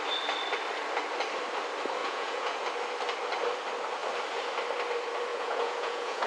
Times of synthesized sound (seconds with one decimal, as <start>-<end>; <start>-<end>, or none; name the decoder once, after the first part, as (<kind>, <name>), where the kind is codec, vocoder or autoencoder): 2.0-2.6 (vocoder, Vocos); 5.3-6.3